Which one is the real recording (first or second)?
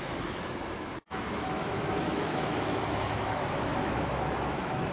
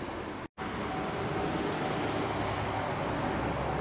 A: second